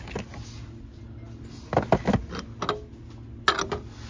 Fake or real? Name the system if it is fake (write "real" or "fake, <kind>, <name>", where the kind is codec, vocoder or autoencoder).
real